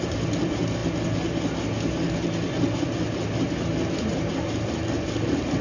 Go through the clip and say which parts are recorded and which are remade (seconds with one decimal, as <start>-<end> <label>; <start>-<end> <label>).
0.0-5.6 recorded